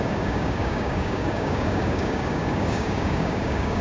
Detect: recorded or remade remade